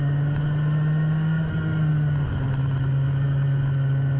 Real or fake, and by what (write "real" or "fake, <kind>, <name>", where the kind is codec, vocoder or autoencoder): real